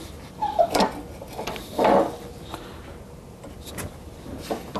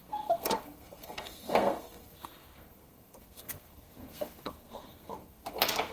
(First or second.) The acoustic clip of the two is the first